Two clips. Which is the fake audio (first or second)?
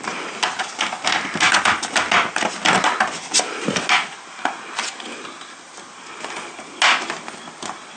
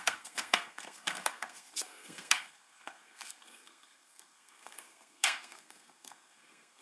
second